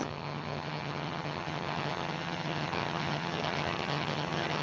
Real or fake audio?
fake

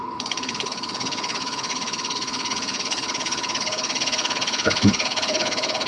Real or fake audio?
fake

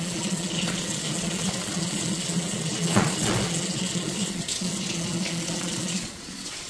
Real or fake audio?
fake